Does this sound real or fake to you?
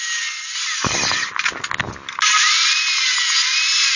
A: real